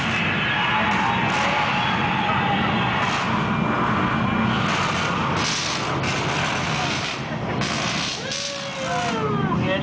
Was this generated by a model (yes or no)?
no